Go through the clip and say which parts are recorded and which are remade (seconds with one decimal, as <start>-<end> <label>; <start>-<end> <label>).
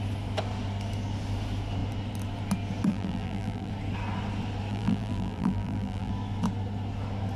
0.0-2.9 recorded; 2.9-3.7 remade; 3.7-4.7 recorded; 4.7-6.1 remade; 6.1-7.4 recorded